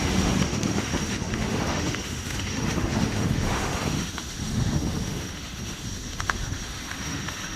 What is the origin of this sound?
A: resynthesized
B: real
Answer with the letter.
A